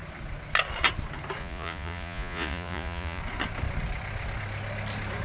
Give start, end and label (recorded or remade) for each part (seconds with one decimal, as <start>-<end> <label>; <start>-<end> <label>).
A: 0.0-1.4 recorded; 1.4-3.2 remade; 3.2-5.2 recorded